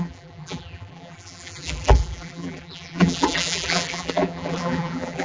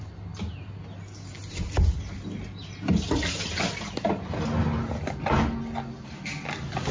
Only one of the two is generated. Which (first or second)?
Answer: first